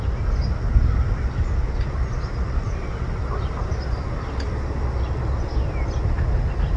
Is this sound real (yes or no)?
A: yes